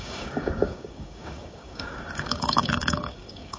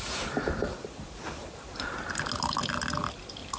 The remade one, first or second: first